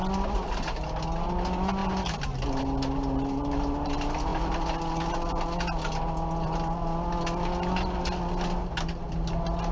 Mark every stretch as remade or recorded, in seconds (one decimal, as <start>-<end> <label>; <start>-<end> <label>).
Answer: 0.0-9.7 recorded